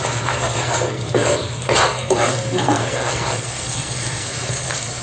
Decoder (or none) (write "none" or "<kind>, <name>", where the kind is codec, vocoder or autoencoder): codec, SNAC